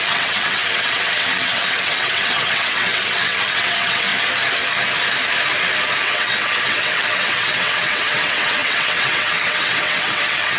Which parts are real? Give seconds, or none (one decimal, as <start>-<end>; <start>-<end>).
4.1-6.0